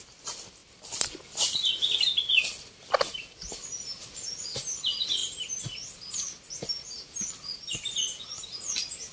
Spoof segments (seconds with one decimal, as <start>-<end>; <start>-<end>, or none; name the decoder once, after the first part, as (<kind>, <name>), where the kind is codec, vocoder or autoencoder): none